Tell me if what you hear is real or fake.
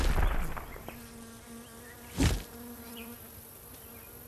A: real